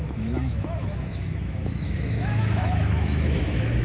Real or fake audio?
fake